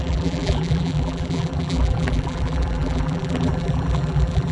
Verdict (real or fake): fake